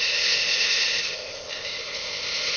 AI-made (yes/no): yes